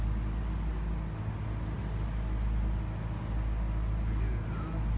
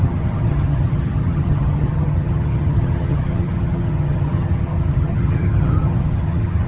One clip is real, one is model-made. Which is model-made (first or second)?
second